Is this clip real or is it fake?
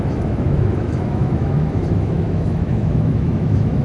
fake